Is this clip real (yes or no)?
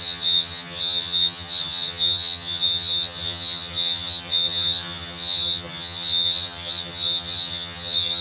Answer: no